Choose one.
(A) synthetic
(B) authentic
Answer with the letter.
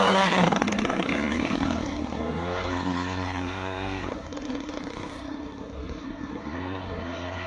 A